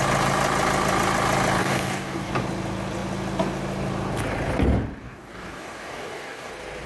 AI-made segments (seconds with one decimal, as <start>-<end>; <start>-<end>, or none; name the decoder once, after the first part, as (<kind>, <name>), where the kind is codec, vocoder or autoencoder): 1.6-2.3 (codec, DAC); 5.0-6.5